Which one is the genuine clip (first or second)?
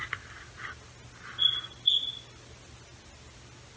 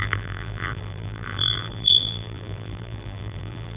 first